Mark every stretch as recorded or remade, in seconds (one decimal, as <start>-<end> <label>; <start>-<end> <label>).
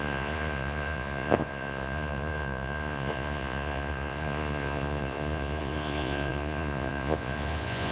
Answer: 0.0-7.9 remade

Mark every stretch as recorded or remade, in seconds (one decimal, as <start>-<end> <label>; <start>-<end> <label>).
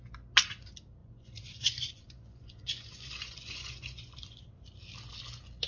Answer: 0.0-1.0 recorded; 1.0-4.4 remade; 4.4-5.7 recorded